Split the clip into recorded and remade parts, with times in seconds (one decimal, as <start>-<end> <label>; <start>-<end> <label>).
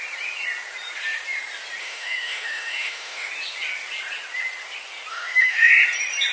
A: 0.0-1.8 recorded; 1.8-3.3 remade; 3.3-5.1 recorded; 5.1-5.7 remade; 5.7-6.3 recorded